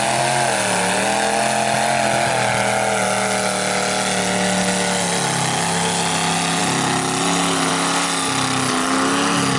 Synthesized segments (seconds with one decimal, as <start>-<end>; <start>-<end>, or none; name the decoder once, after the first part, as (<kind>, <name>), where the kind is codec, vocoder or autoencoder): none